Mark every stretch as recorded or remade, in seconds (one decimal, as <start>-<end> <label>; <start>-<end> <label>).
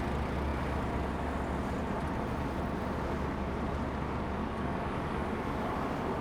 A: 0.0-4.4 recorded; 4.4-5.8 remade; 5.8-6.2 recorded